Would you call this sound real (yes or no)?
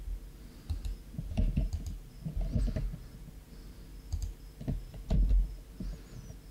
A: yes